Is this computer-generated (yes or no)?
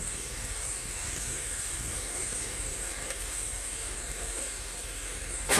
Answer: yes